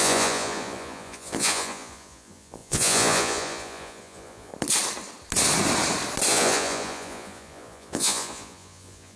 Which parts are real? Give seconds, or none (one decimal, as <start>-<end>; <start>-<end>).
4.5-6.3